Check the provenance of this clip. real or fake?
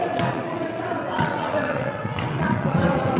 fake